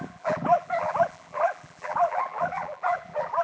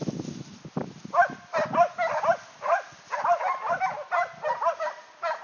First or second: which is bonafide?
second